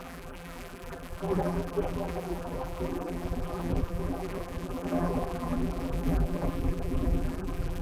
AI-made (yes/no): yes